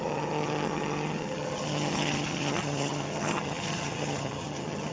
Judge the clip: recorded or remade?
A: remade